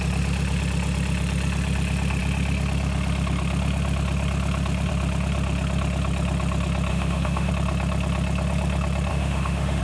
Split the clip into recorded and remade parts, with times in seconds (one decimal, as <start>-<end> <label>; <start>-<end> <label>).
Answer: 0.0-6.9 recorded; 6.9-7.5 remade; 7.5-9.1 recorded; 9.1-9.8 remade